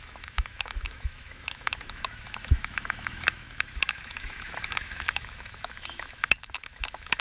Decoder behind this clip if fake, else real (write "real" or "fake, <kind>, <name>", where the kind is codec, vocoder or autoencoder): fake, autoencoder, DAC-VAE